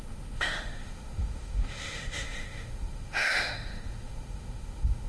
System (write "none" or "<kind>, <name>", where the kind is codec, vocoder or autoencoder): autoencoder, DAC-VAE